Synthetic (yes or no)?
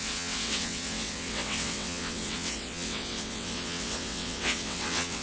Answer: yes